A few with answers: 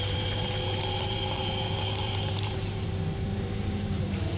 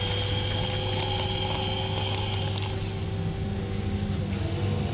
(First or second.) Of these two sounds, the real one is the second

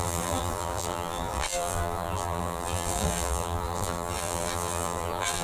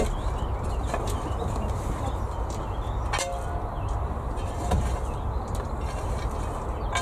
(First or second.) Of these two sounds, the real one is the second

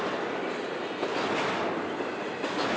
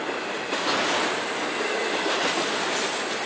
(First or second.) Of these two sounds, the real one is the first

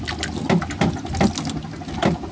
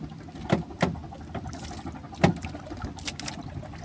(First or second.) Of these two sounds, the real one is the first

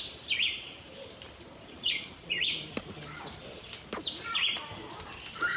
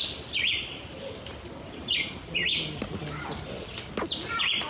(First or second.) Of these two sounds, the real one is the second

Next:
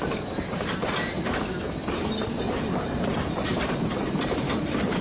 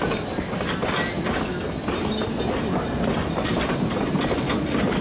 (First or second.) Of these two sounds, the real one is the second